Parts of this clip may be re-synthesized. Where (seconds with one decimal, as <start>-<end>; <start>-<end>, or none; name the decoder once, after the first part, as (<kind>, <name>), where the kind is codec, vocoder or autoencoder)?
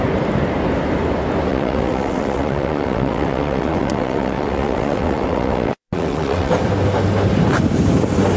1.5-6.5 (vocoder, WaveNeXt)